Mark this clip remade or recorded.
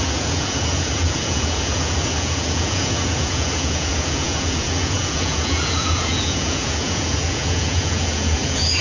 remade